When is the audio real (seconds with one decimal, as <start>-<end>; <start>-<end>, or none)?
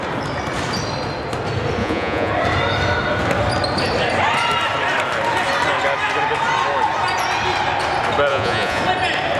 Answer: 0.0-1.8; 2.3-8.3; 8.8-9.4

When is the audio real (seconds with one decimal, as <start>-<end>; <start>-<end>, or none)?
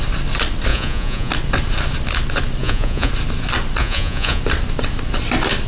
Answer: 0.0-0.7; 1.3-2.6; 3.1-3.8; 4.4-5.7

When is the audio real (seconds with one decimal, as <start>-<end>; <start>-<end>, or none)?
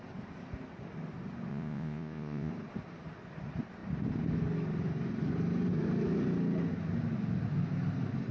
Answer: 0.0-1.5; 2.5-8.3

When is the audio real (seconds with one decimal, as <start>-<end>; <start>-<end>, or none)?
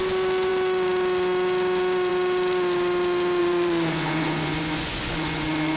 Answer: 0.0-3.4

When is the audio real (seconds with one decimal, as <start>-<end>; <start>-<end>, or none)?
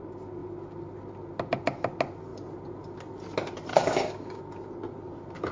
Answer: 0.0-3.7; 4.4-5.5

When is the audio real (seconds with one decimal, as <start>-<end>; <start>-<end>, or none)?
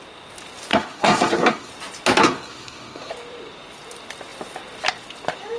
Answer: 0.0-0.7; 1.7-2.2; 3.1-5.6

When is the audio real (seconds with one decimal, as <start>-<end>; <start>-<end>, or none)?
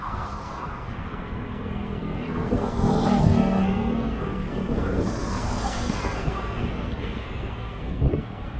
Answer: none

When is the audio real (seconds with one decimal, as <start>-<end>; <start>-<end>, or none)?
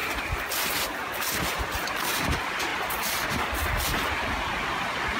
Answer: 2.7-4.1